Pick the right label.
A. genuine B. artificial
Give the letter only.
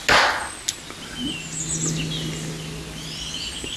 A